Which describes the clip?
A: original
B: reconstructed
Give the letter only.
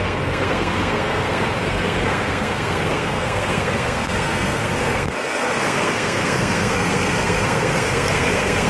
B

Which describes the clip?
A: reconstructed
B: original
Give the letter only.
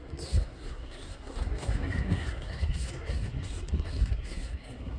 A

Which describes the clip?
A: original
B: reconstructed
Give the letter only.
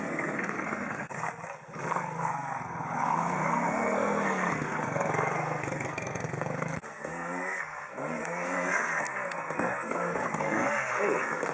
B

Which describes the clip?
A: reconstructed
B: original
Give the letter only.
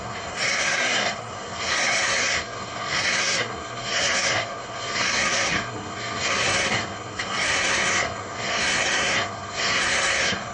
A